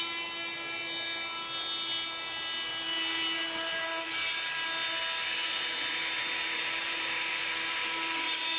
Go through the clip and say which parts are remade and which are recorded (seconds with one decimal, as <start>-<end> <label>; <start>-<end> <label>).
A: 0.0-6.8 recorded; 6.8-8.6 remade